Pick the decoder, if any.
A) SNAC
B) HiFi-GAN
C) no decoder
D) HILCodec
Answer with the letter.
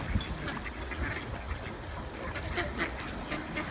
C